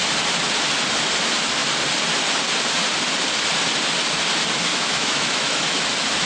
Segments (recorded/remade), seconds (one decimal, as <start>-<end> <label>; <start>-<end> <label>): 0.0-4.7 recorded; 4.7-5.8 remade; 5.8-6.3 recorded

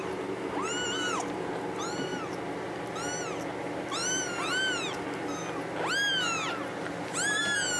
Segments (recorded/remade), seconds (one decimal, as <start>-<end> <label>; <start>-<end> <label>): 0.0-7.8 recorded